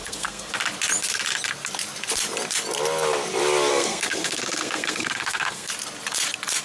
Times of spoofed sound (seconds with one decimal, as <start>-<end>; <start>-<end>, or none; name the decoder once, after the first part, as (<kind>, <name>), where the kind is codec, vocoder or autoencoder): 0.0-0.5 (codec, SNAC); 3.7-5.7